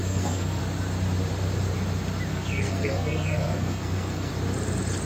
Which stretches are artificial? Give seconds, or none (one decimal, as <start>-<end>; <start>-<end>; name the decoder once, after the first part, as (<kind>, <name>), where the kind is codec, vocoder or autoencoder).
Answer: 0.0-0.6 (codec, SNAC); 2.3-4.3